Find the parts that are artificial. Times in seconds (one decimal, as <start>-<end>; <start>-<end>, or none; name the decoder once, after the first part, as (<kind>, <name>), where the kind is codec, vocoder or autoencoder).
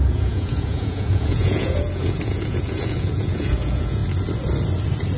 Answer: 0.0-4.0 (vocoder, Vocos)